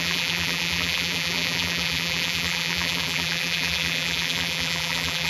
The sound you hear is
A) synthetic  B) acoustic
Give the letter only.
A